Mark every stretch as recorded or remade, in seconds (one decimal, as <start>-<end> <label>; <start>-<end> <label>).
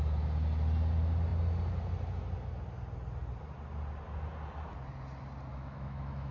0.0-5.5 recorded; 5.5-6.3 remade